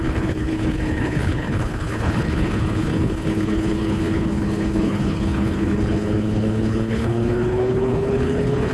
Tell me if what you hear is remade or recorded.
remade